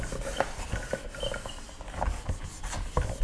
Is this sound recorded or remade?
recorded